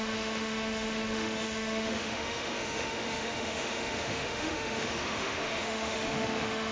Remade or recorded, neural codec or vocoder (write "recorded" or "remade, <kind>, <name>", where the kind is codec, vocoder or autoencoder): remade, autoencoder, DAC-VAE